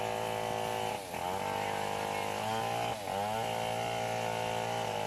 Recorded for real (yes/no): yes